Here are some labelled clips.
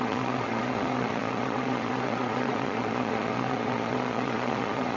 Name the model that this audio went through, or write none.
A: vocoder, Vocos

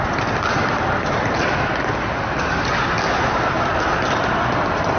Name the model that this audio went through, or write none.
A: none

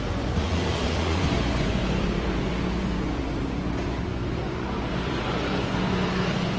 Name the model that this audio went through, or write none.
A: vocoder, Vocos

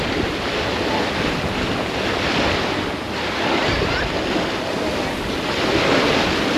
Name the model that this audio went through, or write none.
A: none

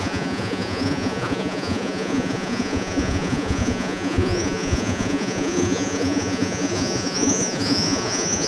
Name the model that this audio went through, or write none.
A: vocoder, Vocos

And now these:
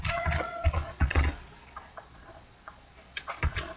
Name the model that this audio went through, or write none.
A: vocoder, Vocos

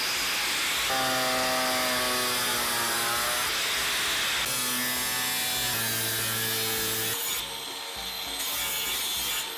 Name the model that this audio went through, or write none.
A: none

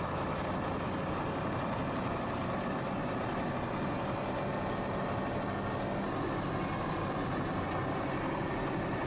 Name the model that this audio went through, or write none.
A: none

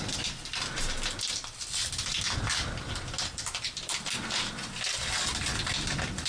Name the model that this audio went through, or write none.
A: none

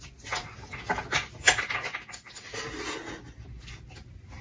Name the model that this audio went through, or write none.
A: none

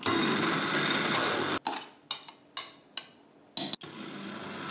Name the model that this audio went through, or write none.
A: none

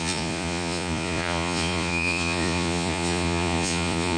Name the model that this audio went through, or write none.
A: vocoder, Vocos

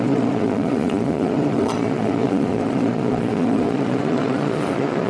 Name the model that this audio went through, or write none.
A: vocoder, Vocos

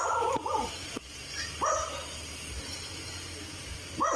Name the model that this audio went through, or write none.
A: none